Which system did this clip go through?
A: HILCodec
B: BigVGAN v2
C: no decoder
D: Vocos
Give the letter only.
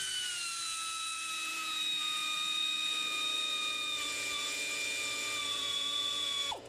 D